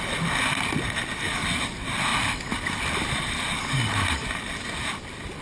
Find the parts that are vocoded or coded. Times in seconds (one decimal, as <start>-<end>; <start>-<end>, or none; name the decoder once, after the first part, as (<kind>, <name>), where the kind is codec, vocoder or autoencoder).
none